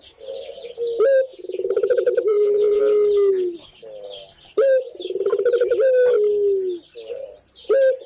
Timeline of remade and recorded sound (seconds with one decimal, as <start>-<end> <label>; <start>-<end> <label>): 0.0-1.3 recorded; 1.3-2.8 remade; 2.8-8.1 recorded